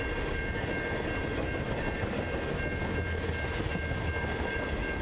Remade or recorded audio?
recorded